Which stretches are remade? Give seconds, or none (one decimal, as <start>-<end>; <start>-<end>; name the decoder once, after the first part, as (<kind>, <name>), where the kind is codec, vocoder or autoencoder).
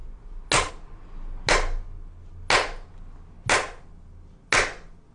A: none